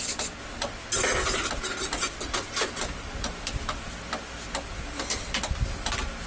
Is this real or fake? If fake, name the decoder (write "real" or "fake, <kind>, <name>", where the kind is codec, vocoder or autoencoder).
real